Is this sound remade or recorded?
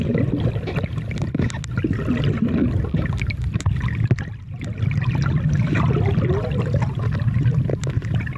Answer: recorded